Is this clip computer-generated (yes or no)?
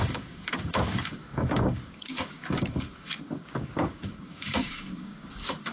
yes